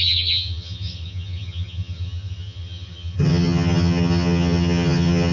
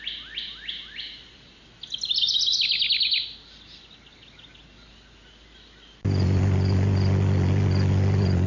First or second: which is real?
second